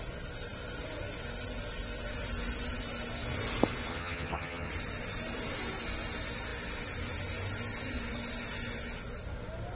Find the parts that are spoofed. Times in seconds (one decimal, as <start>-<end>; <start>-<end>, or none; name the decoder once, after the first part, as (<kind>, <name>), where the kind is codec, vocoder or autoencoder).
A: 3.9-4.7 (vocoder, HiFi-GAN)